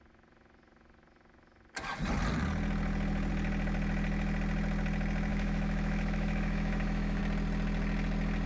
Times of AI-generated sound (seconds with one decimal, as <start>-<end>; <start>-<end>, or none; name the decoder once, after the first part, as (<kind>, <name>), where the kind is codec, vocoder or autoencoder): 5.3-7.2 (autoencoder, DAC-VAE)